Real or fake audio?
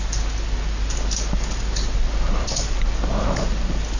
real